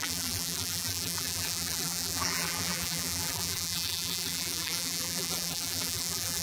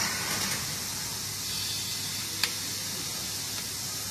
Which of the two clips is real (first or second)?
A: second